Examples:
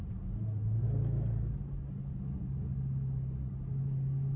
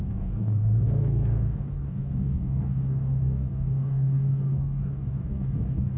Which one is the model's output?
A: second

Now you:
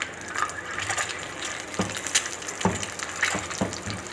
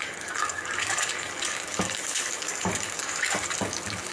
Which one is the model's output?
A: second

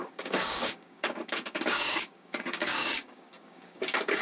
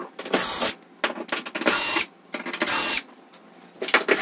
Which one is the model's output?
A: first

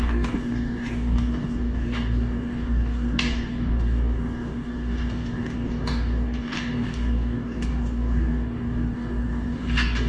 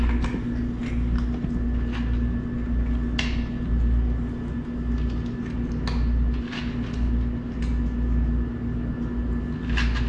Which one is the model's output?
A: first